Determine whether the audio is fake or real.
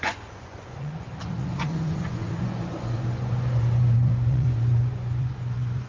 fake